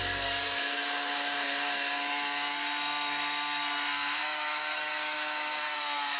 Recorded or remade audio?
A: remade